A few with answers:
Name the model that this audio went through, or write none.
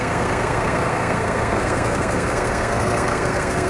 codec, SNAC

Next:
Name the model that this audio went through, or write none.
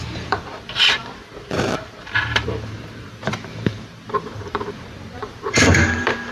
vocoder, BigVGAN v2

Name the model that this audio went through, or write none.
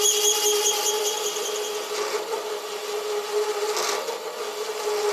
none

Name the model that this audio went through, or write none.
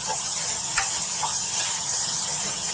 vocoder, HiFi-GAN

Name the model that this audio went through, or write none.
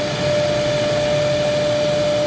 none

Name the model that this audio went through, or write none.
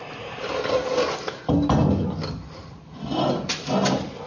none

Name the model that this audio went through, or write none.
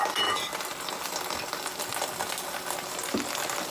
none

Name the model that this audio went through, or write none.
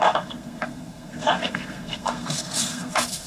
codec, SNAC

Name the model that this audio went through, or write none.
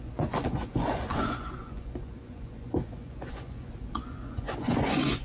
vocoder, Vocos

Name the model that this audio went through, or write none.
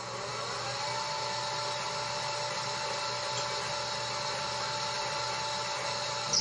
none